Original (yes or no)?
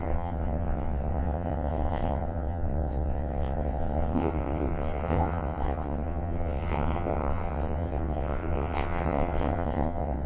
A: no